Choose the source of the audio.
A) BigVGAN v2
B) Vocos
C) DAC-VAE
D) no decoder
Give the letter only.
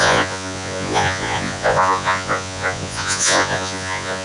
B